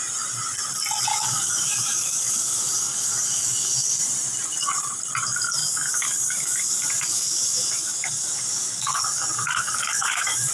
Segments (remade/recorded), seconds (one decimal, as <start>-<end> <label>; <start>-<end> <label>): 0.0-1.1 recorded; 1.1-4.0 remade; 4.0-5.6 recorded; 5.6-10.5 remade